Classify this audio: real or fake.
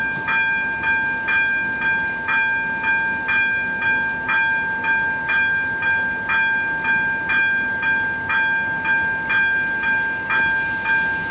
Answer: real